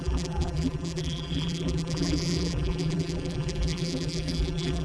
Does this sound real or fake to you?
fake